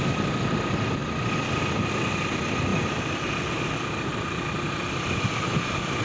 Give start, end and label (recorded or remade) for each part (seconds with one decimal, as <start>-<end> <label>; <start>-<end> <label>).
0.0-6.0 recorded